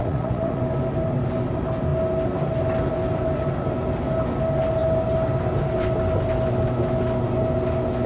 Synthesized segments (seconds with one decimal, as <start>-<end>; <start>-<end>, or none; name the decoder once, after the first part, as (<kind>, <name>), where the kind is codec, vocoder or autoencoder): 0.0-0.6 (vocoder, Vocos)